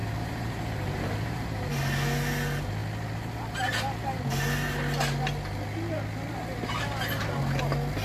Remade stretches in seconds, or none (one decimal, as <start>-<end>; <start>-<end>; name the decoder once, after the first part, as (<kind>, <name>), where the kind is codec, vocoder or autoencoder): 0.0-1.7 (vocoder, BigVGAN v2)